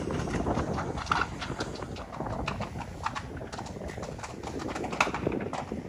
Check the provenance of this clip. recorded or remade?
recorded